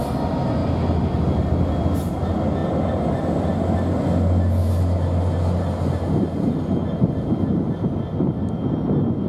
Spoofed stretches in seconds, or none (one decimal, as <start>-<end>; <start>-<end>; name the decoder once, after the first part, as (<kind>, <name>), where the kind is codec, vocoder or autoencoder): none

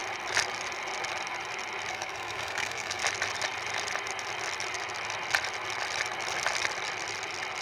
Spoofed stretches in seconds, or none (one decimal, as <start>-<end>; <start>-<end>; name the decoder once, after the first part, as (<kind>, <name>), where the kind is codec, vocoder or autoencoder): 1.9-3.0 (codec, SNAC)

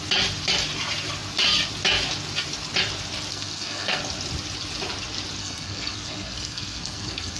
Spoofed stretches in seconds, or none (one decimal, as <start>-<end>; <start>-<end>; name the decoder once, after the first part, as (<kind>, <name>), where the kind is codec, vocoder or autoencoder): 3.3-4.0 (codec, SNAC); 5.4-7.4

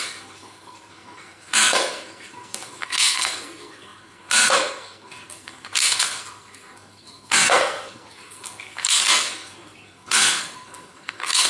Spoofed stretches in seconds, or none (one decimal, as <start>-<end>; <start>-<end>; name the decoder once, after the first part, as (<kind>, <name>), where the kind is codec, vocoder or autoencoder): 0.0-11.5 (codec, SNAC)

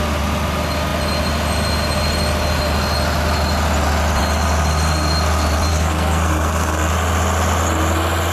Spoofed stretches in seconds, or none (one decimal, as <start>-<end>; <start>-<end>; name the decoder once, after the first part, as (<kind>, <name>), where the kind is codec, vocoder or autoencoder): 5.7-6.9 (codec, SNAC)

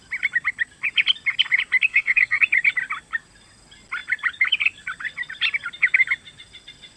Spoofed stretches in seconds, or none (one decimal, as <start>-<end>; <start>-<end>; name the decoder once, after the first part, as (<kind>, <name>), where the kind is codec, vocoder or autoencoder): 1.9-2.4 (codec, SNAC)

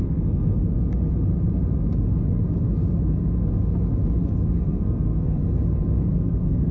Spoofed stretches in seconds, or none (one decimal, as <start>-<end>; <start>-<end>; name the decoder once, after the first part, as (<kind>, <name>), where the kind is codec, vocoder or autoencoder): 0.0-0.6 (codec, SNAC); 4.6-5.4; 6.1-6.7